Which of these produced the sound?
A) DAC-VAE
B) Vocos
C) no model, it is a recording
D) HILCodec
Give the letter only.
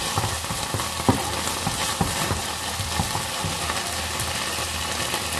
C